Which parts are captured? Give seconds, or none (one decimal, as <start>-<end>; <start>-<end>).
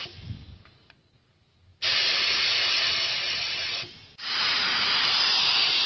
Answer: 0.0-5.9